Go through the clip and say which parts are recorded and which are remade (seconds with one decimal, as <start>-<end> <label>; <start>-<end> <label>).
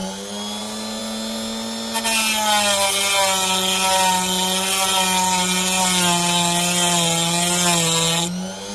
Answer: 0.0-8.7 recorded